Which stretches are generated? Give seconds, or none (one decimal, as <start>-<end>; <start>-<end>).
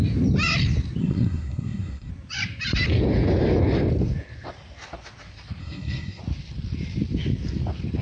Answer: 1.0-2.1; 5.6-6.2